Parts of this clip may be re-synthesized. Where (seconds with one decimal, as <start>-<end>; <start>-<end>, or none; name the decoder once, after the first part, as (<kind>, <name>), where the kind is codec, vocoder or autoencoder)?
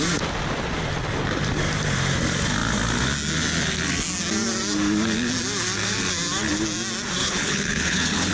7.2-8.3 (codec, HILCodec)